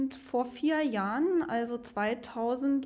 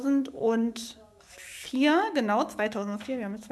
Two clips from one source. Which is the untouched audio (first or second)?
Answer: first